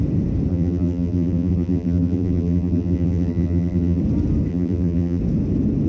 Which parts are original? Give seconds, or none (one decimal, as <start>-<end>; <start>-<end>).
0.0-0.5; 4.0-4.5; 5.2-5.9